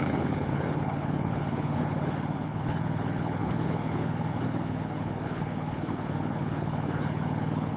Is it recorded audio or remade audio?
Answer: remade